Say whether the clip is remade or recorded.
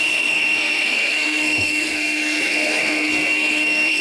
remade